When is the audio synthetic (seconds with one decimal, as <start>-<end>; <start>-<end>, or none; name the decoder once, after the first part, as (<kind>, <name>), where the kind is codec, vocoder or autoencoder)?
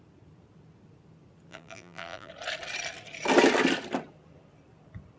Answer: 1.5-2.3 (vocoder, BigVGAN v2)